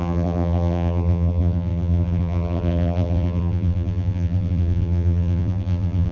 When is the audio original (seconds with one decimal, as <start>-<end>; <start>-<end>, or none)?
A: none